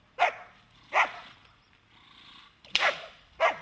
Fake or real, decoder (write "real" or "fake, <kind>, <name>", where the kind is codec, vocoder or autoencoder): fake, vocoder, BigVGAN v2